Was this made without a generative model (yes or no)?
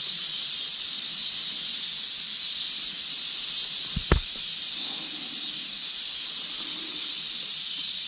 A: yes